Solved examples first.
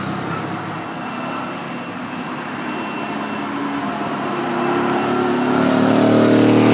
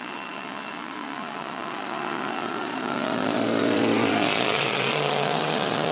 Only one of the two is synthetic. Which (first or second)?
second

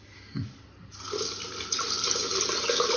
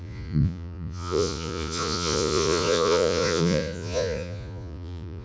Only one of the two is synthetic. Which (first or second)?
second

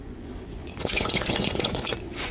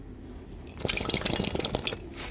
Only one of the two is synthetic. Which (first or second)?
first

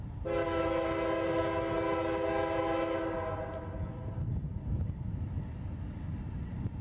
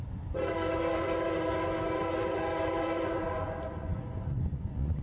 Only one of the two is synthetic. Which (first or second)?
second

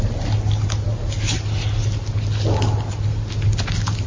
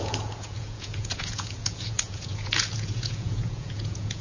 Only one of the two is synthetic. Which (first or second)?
second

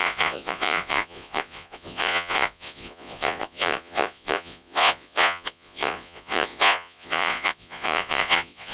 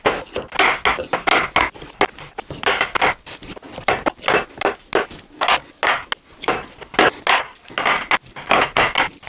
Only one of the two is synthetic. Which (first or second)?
first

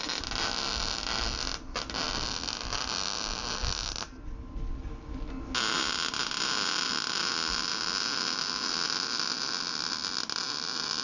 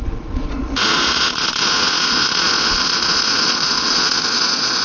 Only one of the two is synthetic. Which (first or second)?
second